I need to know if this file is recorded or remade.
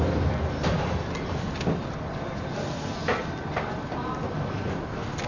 recorded